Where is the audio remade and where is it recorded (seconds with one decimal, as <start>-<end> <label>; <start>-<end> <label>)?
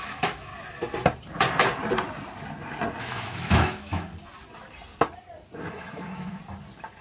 0.0-0.5 remade; 0.5-3.0 recorded; 3.0-4.1 remade; 4.1-5.7 recorded; 5.7-6.4 remade; 6.4-7.0 recorded